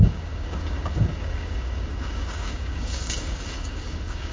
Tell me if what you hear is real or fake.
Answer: fake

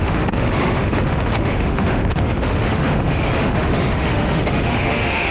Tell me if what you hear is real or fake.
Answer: fake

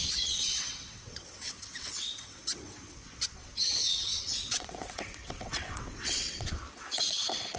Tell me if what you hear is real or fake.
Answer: fake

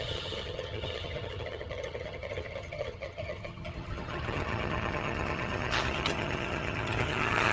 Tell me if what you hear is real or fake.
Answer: fake